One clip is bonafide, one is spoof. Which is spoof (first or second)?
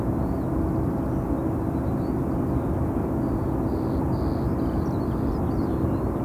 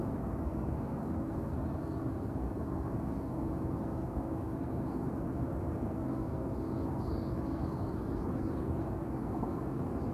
second